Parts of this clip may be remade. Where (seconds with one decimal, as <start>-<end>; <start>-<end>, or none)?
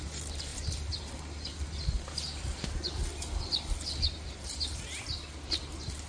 none